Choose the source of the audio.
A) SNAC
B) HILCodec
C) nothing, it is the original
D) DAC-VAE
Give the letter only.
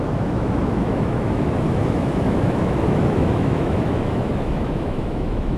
D